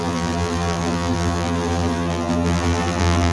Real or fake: fake